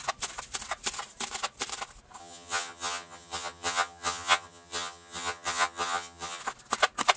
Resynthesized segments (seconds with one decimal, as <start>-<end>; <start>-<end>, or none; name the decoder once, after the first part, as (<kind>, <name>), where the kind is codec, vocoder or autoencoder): 2.2-6.4 (vocoder, HiFi-GAN)